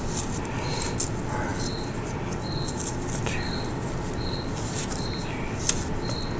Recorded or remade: recorded